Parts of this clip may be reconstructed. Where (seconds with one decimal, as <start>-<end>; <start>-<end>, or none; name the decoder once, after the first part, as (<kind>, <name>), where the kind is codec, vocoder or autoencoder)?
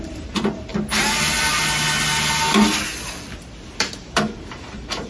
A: 0.0-0.7 (vocoder, BigVGAN v2); 3.8-5.1